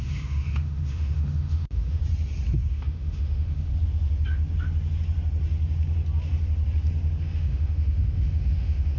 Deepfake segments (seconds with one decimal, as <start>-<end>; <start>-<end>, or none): 0.0-2.0; 2.7-3.7; 7.2-9.0